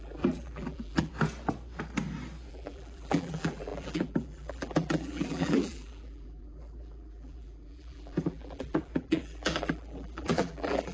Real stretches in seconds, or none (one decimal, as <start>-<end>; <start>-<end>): 1.1-2.5